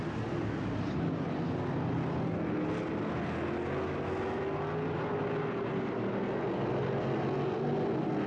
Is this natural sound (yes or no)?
yes